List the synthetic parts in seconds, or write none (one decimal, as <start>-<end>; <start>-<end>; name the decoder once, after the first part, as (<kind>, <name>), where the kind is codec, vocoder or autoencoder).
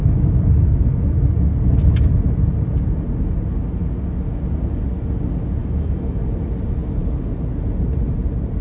5.6-6.2 (autoencoder, DAC-VAE)